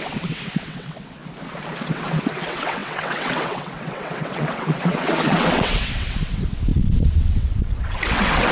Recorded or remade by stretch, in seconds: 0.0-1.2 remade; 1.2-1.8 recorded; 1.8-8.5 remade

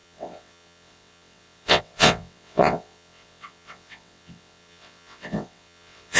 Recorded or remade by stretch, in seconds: 0.0-6.2 remade

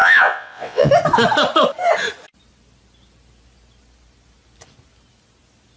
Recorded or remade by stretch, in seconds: 0.0-0.9 remade; 0.9-5.8 recorded

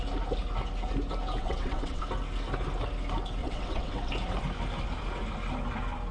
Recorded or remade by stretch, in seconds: 0.0-1.4 recorded; 1.4-2.0 remade; 2.0-3.4 recorded; 3.4-4.1 remade; 4.1-6.1 recorded

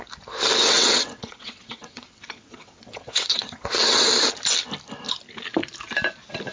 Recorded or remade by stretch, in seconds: 0.0-0.6 recorded; 0.6-4.1 remade; 4.1-6.5 recorded

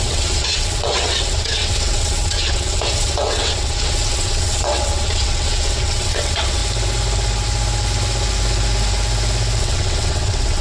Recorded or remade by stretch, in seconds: 0.0-6.6 remade; 6.6-9.6 recorded; 9.6-10.6 remade

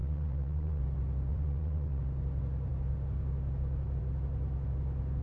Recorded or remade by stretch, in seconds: 0.0-0.8 remade; 0.8-1.3 recorded; 1.3-2.0 remade; 2.0-5.2 recorded